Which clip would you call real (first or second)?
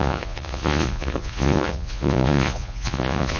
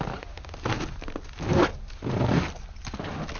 second